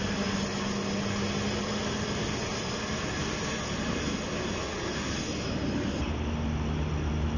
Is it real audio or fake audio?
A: real